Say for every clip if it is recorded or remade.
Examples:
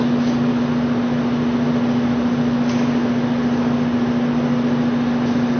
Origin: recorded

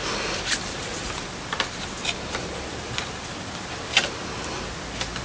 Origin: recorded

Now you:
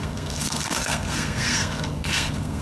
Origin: remade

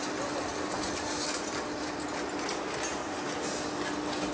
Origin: recorded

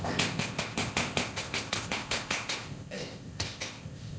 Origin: remade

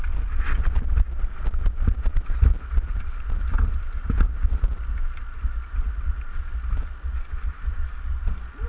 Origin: recorded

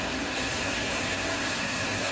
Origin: remade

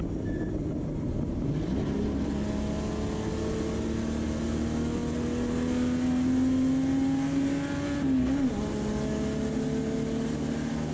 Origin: recorded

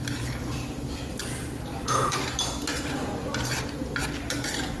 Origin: recorded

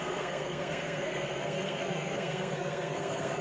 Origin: remade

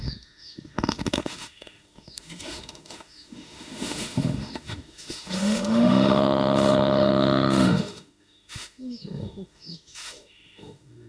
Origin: remade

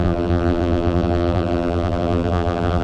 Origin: remade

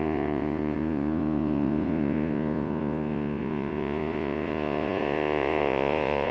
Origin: remade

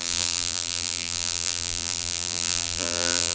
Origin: remade